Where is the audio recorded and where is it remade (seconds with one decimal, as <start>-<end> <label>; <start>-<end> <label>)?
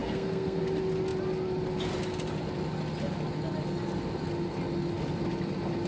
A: 0.0-0.6 remade; 0.6-5.9 recorded